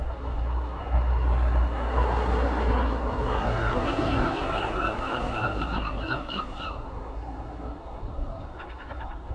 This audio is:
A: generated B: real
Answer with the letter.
A